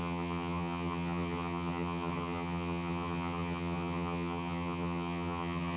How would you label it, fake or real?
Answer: fake